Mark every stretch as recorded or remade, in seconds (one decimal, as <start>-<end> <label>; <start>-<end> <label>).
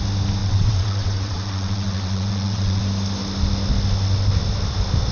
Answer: 0.0-0.4 recorded; 0.4-2.8 remade; 2.8-5.1 recorded